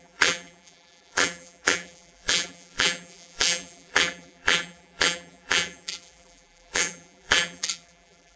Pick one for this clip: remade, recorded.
remade